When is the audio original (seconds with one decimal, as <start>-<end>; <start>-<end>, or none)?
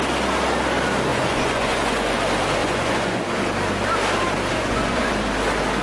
0.0-1.1; 2.2-2.6; 3.2-4.5; 5.1-5.8